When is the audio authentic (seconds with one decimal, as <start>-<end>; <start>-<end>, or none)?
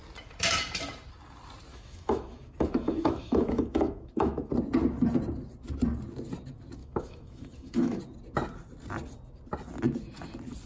0.0-1.7; 4.5-6.8; 8.0-10.7